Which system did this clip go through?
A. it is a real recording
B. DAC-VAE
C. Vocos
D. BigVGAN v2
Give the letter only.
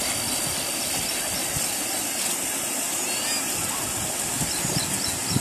A